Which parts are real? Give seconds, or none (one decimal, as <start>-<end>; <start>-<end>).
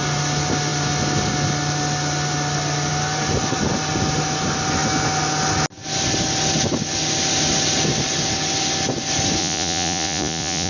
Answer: 0.0-9.4